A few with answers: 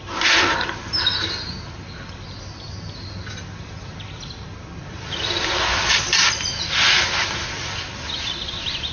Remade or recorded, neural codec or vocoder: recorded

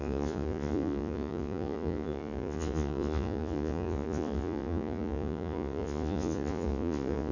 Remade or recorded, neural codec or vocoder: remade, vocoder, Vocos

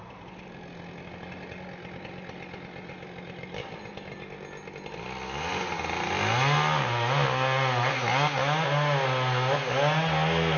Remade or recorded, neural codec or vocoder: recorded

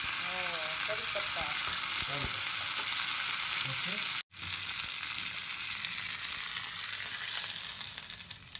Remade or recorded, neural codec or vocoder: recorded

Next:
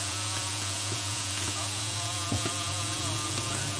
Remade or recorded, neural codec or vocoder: remade, vocoder, Vocos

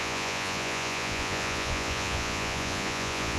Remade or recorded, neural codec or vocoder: remade, vocoder, Vocos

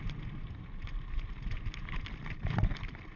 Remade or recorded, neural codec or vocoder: recorded